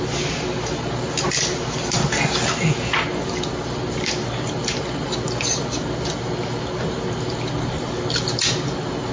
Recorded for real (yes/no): yes